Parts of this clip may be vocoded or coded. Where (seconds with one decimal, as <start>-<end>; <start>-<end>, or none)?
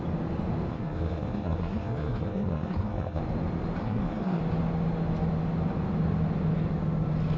0.7-3.2; 3.8-4.4